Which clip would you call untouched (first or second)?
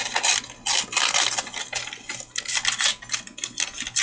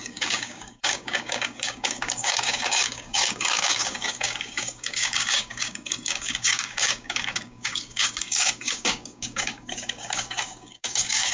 first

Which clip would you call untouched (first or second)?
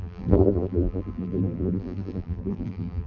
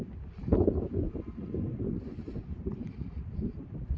second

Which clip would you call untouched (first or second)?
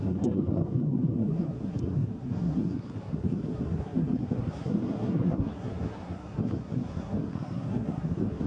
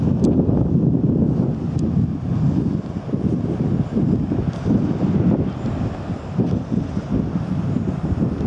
second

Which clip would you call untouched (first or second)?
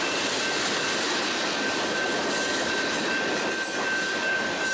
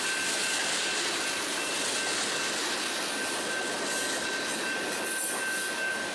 second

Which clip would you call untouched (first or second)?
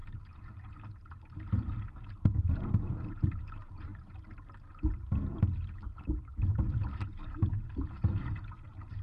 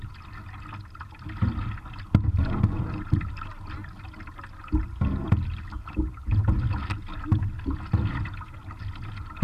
second